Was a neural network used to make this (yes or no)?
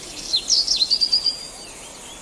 no